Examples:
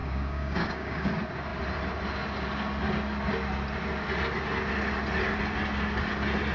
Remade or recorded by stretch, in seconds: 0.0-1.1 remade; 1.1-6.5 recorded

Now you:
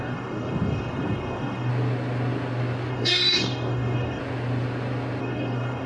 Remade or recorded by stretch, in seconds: 0.0-1.7 remade; 1.7-2.9 recorded; 2.9-4.2 remade; 4.2-5.2 recorded; 5.2-5.9 remade

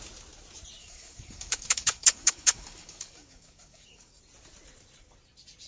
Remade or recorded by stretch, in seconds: 0.0-0.8 recorded; 0.8-4.2 remade; 4.2-5.7 recorded

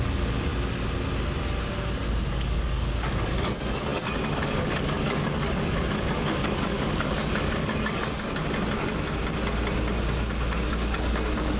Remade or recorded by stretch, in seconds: 0.0-0.5 remade; 0.5-2.3 recorded; 2.3-8.4 remade; 8.4-10.7 recorded; 10.7-11.6 remade

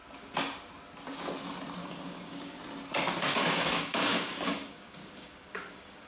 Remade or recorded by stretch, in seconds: 0.0-1.8 recorded; 1.8-2.6 remade; 2.6-3.3 recorded; 3.3-6.1 remade

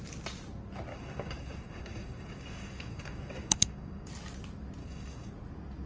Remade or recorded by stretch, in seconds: 0.0-0.9 recorded; 0.9-4.1 remade; 4.1-4.8 recorded; 4.8-5.3 remade; 5.3-5.9 recorded